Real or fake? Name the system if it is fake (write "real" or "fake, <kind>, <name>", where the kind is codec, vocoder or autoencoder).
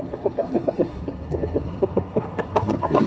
fake, codec, SNAC